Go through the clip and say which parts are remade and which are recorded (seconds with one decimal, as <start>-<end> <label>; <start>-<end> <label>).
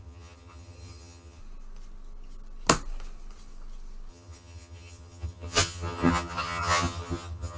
0.0-1.4 remade; 1.4-4.1 recorded; 4.1-7.6 remade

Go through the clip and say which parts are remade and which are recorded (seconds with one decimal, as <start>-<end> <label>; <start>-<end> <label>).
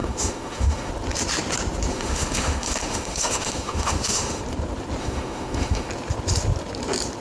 0.0-0.9 remade; 0.9-1.9 recorded; 1.9-4.4 remade; 4.4-5.0 recorded; 5.0-5.9 remade; 5.9-7.2 recorded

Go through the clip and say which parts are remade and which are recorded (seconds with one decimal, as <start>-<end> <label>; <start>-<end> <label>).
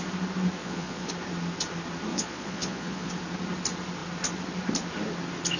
0.0-0.6 recorded; 0.6-1.1 remade; 1.1-2.1 recorded; 2.1-3.1 remade; 3.1-5.6 recorded